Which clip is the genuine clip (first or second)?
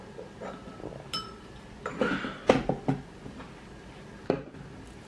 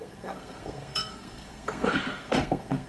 first